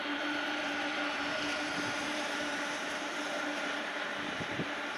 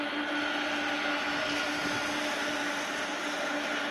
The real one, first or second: second